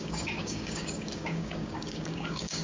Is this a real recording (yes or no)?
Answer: no